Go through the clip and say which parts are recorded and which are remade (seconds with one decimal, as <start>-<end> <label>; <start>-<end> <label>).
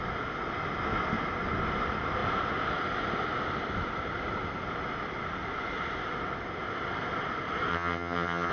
0.0-7.7 recorded; 7.7-8.5 remade